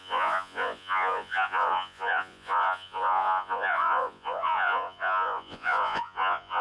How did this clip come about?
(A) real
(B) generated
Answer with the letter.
B